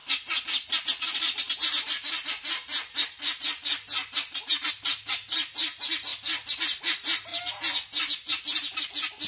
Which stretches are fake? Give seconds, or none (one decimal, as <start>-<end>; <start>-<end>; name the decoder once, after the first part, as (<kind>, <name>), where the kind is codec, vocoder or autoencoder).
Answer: none